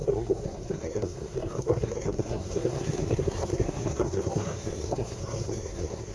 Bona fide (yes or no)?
no